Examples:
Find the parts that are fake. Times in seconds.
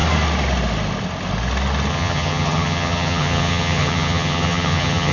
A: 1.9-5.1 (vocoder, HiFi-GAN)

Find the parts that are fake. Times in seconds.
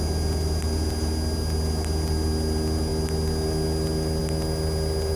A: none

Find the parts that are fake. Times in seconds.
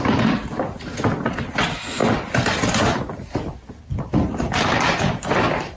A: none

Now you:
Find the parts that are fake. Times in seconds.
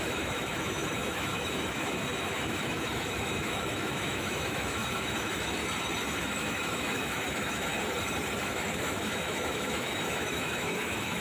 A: 0.0-5.6 (autoencoder, DAC-VAE); 6.2-7.7; 8.4-11.2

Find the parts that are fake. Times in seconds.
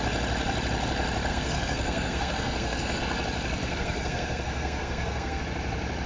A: 1.3-3.0 (codec, SNAC); 3.6-5.4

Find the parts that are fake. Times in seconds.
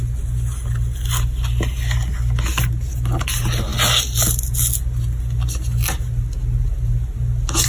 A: none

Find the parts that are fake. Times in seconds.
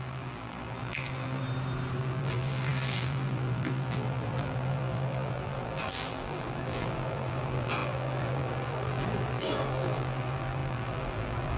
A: 0.0-1.4 (vocoder, BigVGAN v2); 2.0-11.6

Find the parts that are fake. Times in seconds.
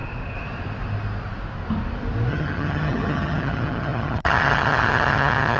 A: 2.3-5.6 (vocoder, HiFi-GAN)